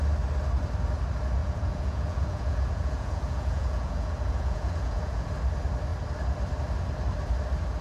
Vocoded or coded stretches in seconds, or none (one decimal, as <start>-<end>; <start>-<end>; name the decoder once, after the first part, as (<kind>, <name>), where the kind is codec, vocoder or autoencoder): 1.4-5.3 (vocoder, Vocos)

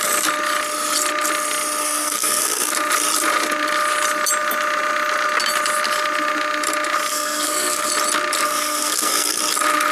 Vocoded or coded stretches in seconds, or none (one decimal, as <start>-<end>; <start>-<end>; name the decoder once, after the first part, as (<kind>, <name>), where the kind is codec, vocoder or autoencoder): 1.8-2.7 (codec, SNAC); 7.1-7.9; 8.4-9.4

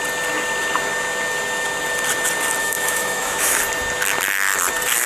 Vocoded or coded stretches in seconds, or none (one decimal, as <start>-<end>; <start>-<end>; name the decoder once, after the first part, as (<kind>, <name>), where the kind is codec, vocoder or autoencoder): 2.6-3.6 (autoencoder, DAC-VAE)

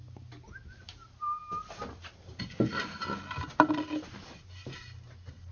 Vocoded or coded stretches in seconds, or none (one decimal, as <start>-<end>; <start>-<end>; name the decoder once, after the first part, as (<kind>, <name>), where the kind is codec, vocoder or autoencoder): none

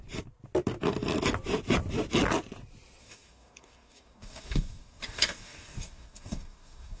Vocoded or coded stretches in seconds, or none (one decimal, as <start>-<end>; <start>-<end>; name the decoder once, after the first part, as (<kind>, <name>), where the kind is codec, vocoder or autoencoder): 3.0-7.0 (codec, DAC)

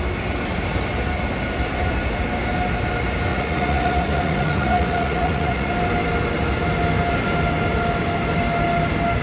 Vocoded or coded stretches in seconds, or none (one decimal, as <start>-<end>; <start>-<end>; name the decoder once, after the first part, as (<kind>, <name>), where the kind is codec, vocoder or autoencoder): 3.3-5.7 (vocoder, Vocos)

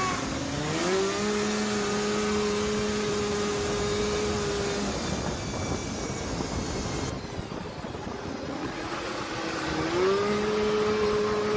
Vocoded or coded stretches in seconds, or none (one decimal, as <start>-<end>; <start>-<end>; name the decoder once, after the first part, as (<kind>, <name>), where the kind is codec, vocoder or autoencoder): 8.0-9.2 (vocoder, Vocos)

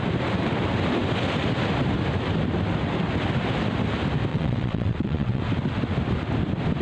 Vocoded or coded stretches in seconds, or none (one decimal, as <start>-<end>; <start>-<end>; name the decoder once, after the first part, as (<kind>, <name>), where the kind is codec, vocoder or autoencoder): 4.3-5.4 (vocoder, WaveNeXt)